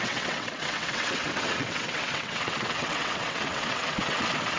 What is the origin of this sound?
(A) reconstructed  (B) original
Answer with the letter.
A